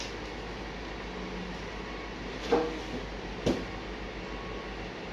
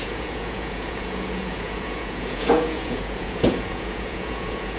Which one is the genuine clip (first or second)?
first